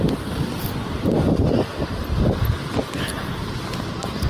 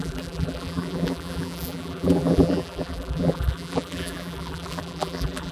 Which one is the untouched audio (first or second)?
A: first